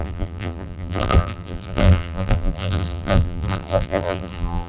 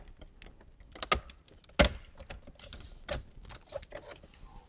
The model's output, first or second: first